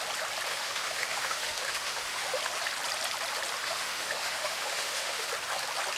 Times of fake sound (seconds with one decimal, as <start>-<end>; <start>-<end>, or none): 0.5-2.4; 3.6-5.3